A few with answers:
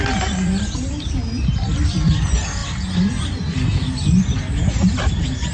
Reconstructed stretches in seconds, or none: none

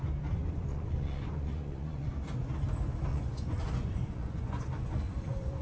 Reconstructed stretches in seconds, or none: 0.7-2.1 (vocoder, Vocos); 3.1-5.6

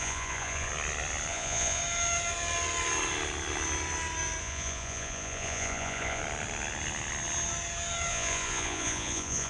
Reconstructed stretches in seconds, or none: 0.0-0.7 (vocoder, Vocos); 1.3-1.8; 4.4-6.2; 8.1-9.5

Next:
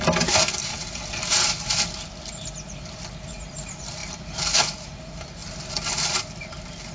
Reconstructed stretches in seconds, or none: 0.0-6.9 (vocoder, BigVGAN v2)